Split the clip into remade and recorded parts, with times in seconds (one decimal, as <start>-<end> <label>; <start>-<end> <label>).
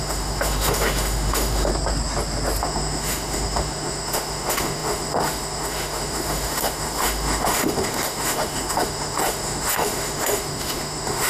0.0-1.7 remade; 1.7-2.6 recorded; 2.6-11.3 remade